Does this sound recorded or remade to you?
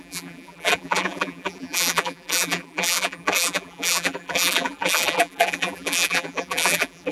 remade